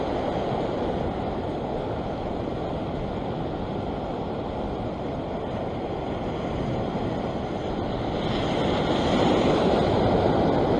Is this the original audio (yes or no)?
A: yes